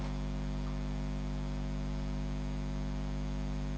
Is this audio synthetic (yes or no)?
no